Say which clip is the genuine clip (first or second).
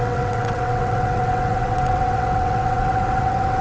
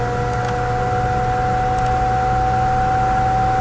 second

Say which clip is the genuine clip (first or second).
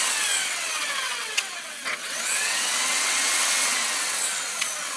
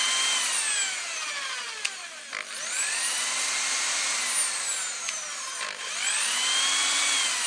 second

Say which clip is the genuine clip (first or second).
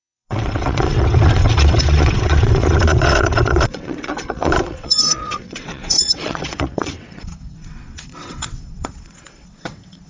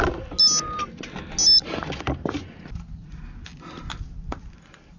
second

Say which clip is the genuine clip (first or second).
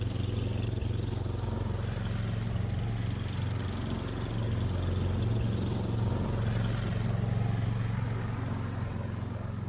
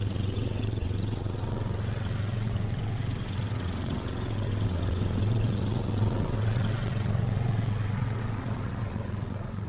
first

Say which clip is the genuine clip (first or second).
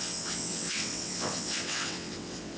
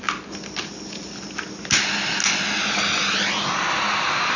second